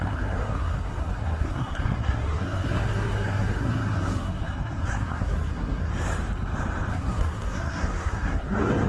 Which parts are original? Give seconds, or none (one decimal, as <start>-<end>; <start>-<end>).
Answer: 5.9-6.9